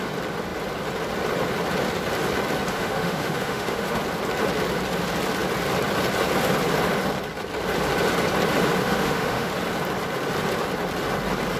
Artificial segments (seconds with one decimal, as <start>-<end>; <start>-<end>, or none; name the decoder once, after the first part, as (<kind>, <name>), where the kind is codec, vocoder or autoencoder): 2.7-4.0 (autoencoder, DAC-VAE); 8.8-9.5